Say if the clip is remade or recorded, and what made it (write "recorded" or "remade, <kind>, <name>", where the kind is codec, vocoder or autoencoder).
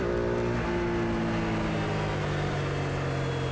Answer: recorded